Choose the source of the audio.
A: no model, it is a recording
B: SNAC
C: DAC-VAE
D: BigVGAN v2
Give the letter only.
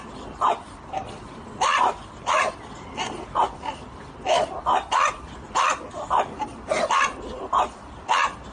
D